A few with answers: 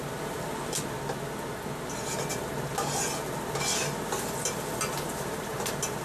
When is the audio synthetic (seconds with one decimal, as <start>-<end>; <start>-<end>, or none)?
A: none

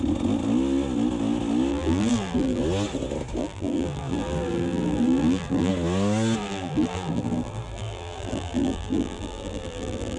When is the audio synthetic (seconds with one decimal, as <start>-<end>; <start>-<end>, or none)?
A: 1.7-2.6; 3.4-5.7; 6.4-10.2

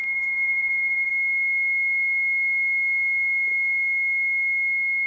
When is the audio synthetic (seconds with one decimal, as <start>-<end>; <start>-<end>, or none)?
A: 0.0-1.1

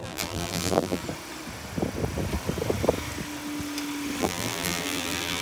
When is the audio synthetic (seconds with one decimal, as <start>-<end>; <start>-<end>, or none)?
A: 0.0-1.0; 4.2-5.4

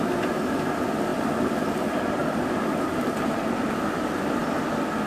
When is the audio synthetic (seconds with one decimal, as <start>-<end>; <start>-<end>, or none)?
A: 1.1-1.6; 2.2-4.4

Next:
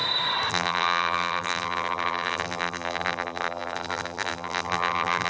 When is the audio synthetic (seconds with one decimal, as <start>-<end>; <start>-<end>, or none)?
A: 0.5-5.3

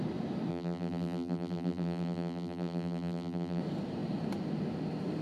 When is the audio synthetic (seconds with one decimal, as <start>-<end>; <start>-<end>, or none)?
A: 0.5-3.6

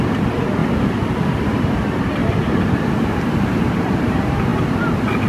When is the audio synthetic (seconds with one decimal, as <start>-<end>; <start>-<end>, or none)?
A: 2.2-3.8